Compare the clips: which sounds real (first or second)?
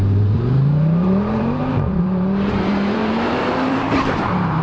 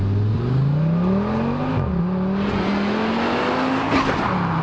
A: second